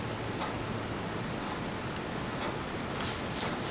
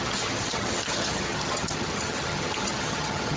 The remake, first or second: second